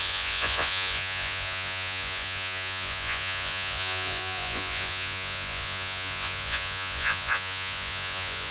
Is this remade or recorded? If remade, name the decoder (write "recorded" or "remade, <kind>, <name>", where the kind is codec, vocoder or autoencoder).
remade, vocoder, Vocos